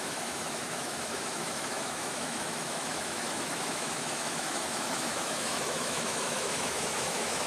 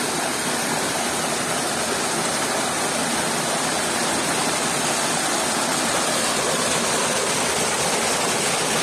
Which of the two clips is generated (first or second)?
first